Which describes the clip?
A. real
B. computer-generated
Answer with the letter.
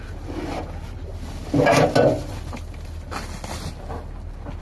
A